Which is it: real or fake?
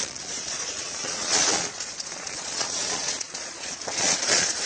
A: fake